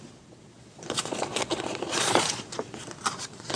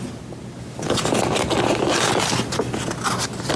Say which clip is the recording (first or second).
second